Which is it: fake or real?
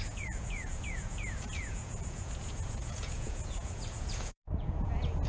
fake